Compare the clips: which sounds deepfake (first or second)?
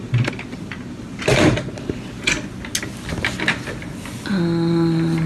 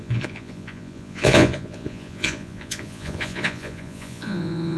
second